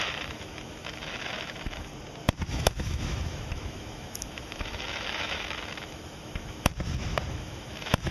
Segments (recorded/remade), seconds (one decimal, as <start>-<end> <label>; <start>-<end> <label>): 0.0-1.9 remade; 1.9-2.5 recorded; 2.5-6.7 remade; 6.7-7.3 recorded; 7.3-8.1 remade